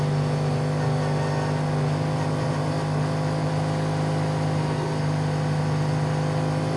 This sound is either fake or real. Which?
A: real